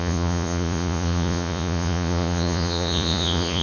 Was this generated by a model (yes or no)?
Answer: yes